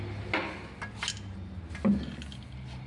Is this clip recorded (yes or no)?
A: yes